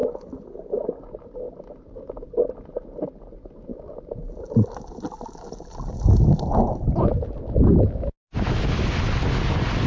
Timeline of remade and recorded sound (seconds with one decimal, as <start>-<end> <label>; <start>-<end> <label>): 0.0-9.9 recorded